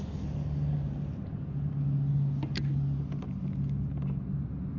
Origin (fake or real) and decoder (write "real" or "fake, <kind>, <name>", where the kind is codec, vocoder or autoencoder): real